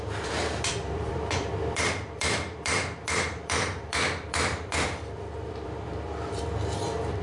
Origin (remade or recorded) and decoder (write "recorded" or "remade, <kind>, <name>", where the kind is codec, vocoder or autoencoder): remade, vocoder, BigVGAN v2